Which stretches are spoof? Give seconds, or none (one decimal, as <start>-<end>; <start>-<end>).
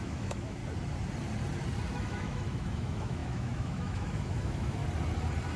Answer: 0.0-0.6; 1.9-4.8